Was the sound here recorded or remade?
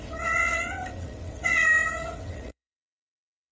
remade